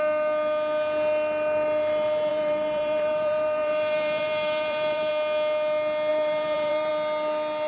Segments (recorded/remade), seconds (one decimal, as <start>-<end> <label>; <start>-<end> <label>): 0.0-2.3 recorded; 2.3-5.1 remade; 5.1-6.1 recorded; 6.1-6.9 remade; 6.9-7.7 recorded